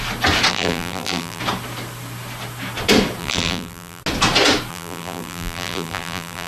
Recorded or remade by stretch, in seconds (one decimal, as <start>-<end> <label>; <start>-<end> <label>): 0.0-0.5 recorded; 0.5-1.4 remade; 1.4-3.2 recorded; 3.2-4.0 remade; 4.0-4.7 recorded; 4.7-6.5 remade